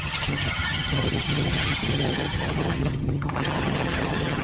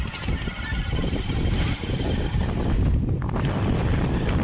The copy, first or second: first